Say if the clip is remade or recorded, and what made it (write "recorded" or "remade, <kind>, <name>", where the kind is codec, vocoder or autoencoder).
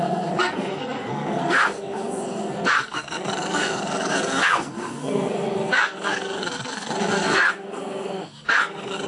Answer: remade, codec, SNAC